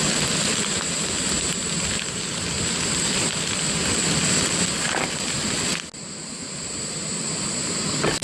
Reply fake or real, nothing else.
real